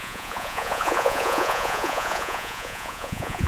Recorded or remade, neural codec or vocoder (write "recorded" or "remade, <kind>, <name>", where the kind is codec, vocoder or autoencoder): remade, vocoder, Vocos